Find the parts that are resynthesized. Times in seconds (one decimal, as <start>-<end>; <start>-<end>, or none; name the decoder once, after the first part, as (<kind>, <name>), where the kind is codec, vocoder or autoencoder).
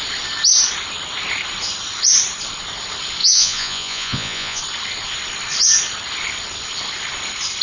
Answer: 3.2-4.6 (vocoder, Vocos)